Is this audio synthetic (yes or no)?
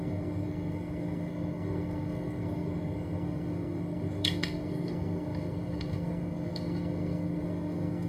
yes